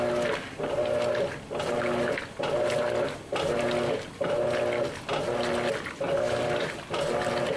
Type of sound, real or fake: real